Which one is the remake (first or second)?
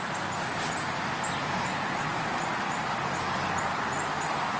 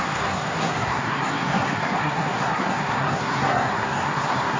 second